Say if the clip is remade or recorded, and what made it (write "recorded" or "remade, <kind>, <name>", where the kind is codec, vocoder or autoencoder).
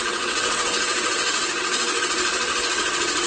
remade, vocoder, WaveNeXt